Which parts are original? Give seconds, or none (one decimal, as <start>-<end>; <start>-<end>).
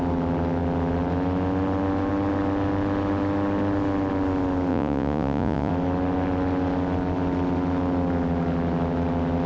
0.0-4.7; 5.7-9.5